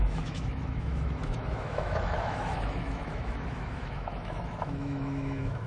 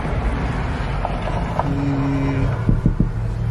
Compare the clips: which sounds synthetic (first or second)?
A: first